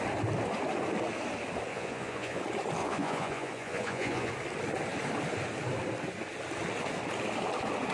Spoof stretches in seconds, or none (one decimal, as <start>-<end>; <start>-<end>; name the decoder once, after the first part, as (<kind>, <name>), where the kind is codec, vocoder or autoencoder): 1.7-2.4 (vocoder, Vocos); 2.8-4.3